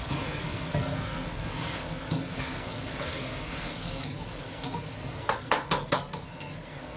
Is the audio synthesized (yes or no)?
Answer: yes